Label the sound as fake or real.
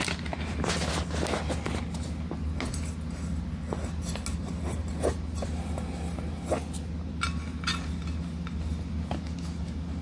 real